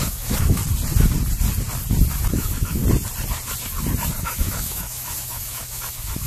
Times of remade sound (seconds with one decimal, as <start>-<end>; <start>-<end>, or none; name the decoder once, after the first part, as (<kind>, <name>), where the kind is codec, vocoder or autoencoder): 0.0-0.6 (autoencoder, DAC-VAE); 2.3-2.8; 4.2-6.3

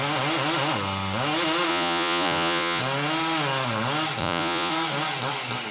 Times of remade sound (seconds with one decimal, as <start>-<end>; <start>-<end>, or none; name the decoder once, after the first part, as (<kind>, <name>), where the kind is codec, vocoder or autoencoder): 1.7-2.8 (vocoder, Vocos); 4.2-4.7

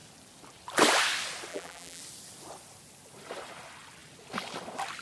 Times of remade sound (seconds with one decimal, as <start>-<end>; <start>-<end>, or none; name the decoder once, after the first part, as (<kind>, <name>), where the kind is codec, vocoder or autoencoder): 1.5-2.0 (vocoder, BigVGAN v2)

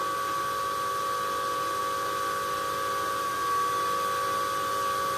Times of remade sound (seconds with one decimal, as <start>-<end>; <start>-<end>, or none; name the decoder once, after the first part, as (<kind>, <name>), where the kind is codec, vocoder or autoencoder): none